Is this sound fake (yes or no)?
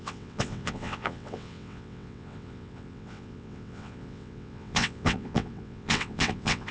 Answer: yes